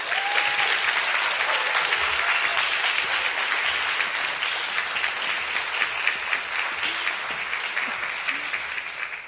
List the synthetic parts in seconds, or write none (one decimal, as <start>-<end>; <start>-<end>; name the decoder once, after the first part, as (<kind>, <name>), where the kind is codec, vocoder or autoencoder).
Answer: none